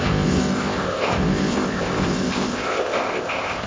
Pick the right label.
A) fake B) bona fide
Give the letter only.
A